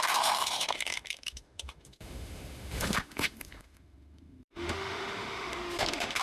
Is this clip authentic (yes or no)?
no